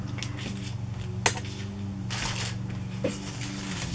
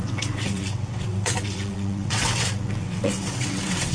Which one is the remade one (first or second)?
second